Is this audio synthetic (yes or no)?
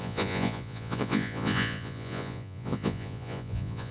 yes